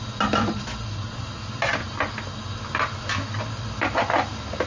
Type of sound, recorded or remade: recorded